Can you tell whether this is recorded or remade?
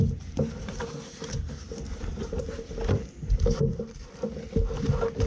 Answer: recorded